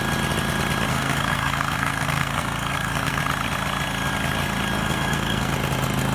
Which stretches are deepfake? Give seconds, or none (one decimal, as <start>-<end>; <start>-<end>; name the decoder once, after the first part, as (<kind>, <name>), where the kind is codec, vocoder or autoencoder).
0.9-3.2 (codec, SNAC); 4.8-5.5